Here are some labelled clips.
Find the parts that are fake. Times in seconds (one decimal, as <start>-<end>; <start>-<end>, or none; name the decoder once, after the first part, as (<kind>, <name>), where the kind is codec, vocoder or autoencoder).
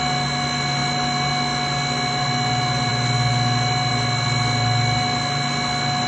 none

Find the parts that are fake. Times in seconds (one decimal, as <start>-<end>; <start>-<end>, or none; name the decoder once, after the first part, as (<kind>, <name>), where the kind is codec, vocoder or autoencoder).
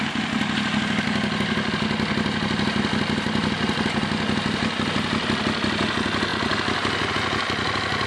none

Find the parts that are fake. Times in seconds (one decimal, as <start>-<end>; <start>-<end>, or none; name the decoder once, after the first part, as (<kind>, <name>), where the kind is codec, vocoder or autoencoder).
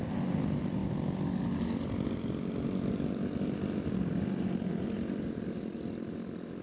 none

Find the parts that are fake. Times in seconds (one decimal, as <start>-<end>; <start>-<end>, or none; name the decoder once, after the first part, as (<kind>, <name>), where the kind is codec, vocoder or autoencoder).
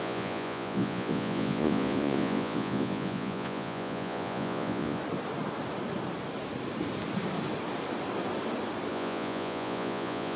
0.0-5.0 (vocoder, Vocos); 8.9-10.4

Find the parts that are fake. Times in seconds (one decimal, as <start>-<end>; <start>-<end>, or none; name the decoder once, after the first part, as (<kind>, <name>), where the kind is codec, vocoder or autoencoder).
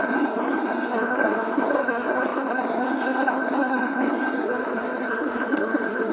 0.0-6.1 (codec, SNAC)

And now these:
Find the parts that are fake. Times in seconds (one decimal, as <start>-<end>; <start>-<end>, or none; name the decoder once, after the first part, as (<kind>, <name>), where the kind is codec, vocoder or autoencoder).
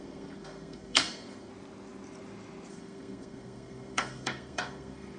0.0-1.5 (codec, SNAC); 2.7-5.2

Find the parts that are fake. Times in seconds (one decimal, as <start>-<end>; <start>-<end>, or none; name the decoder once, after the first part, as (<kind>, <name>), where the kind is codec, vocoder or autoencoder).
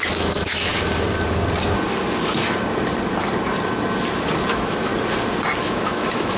0.0-0.7 (autoencoder, DAC-VAE); 4.5-4.9; 5.6-6.4